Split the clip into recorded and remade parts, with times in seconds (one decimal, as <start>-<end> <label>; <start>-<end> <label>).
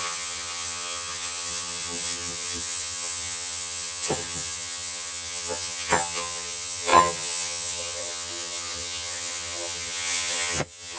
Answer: 0.0-11.0 remade